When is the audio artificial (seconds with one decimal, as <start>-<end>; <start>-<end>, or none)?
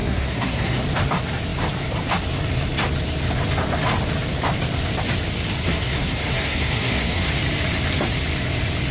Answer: 0.0-0.8; 5.6-7.3